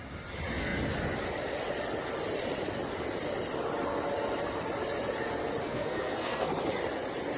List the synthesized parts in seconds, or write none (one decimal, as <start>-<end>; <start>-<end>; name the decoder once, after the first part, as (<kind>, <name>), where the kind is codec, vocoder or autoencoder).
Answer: 5.6-6.5 (codec, SNAC)